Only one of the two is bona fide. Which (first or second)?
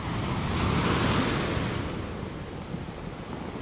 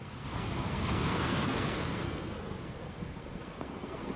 first